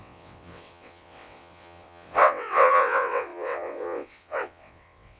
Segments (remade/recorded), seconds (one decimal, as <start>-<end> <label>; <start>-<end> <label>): 0.0-5.2 remade